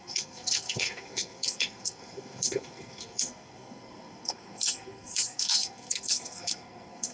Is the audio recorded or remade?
remade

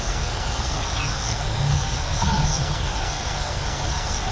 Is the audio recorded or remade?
remade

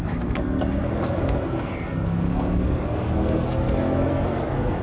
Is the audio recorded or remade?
remade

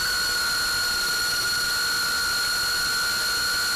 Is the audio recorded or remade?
recorded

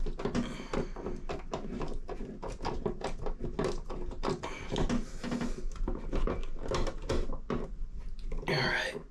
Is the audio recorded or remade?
recorded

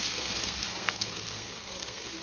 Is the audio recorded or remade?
remade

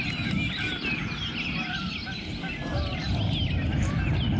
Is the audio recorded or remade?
recorded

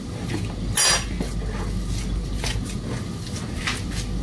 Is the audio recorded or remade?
recorded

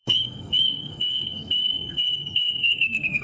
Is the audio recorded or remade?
remade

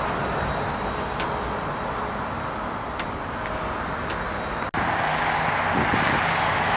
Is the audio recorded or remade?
recorded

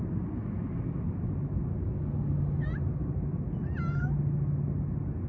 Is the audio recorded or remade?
recorded